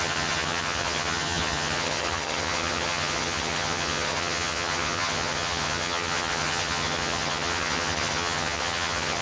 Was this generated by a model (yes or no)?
yes